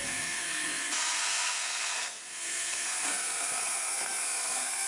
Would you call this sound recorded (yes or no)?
no